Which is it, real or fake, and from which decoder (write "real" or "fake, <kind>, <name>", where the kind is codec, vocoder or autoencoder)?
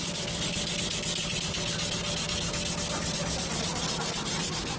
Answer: real